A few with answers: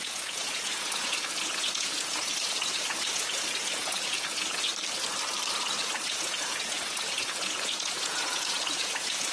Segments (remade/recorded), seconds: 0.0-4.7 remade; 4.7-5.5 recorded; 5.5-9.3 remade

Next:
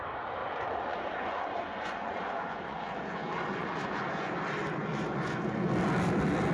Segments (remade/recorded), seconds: 0.0-0.4 recorded; 0.4-4.3 remade; 4.3-4.9 recorded; 4.9-5.7 remade; 5.7-6.5 recorded